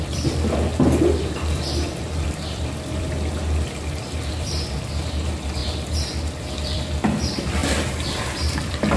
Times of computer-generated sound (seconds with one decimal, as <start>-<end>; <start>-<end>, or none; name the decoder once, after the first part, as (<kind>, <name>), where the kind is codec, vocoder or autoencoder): 0.0-0.7 (vocoder, BigVGAN v2); 1.2-5.6; 6.4-7.6; 8.2-9.0